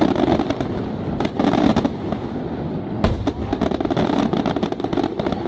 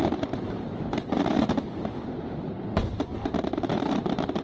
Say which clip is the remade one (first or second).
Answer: second